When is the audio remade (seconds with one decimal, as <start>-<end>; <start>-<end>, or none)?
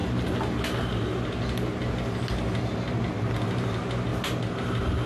none